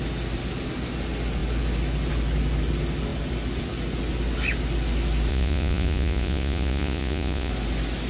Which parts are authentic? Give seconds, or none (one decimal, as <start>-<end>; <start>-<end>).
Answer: 0.0-5.3; 7.5-8.1